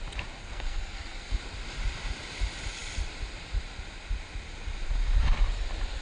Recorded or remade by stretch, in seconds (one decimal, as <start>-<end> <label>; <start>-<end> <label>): 0.0-0.4 recorded; 0.4-1.4 remade; 1.4-6.0 recorded